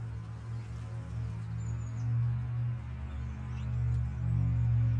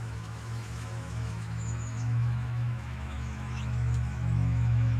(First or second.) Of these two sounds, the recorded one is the first